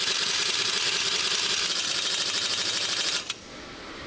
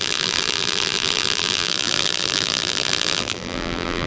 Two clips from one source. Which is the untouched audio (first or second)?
first